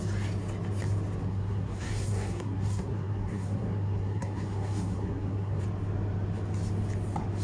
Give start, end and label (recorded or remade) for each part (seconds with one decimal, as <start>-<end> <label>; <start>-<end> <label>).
0.0-1.2 recorded; 1.2-5.6 remade; 5.6-7.4 recorded